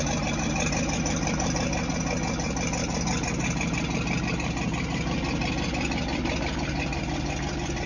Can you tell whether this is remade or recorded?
recorded